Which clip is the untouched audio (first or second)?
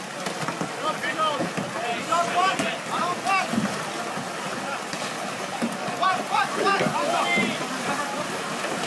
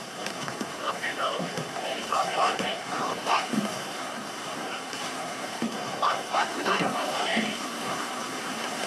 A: first